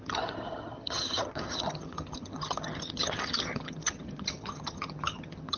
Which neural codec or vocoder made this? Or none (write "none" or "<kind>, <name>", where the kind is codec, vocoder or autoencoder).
vocoder, HiFi-GAN